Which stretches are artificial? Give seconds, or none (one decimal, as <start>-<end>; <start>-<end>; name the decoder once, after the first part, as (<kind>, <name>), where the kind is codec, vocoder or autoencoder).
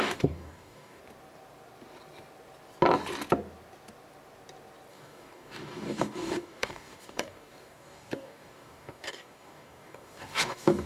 0.0-1.0 (codec, DAC); 4.9-10.9